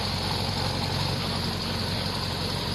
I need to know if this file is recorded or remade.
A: recorded